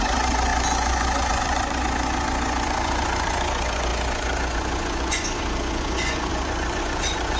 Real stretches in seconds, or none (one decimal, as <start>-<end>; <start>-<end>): none